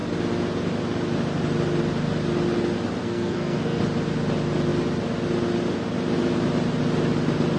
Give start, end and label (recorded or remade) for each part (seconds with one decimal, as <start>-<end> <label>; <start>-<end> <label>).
0.0-3.0 recorded; 3.0-3.8 remade; 3.8-7.6 recorded